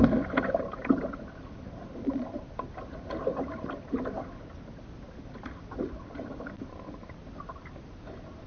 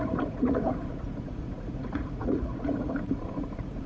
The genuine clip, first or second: first